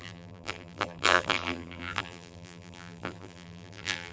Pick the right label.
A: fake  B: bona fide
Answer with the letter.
A